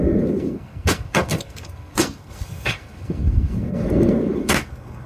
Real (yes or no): no